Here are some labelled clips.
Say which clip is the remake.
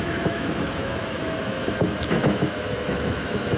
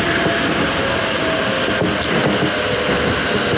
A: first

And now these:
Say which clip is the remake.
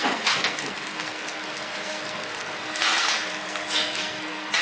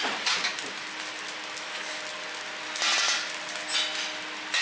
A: first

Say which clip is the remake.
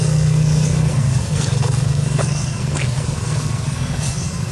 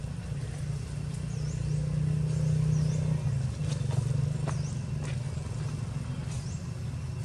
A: first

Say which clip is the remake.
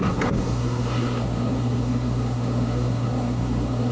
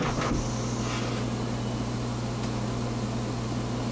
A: first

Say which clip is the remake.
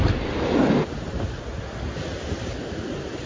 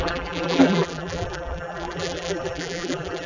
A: second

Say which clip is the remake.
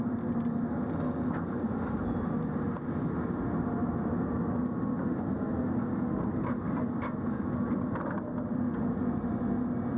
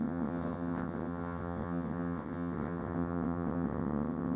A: second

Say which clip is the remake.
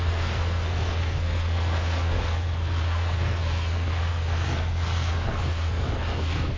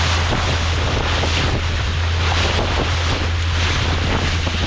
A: first